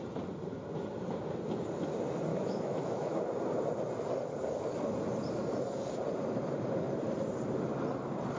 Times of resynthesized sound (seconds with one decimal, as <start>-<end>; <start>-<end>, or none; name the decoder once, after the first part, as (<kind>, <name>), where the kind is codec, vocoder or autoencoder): 2.3-3.2 (autoencoder, DAC-VAE)